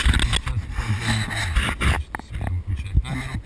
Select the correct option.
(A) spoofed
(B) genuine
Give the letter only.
B